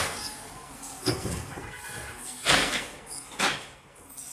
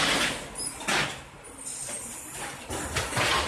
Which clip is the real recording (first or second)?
second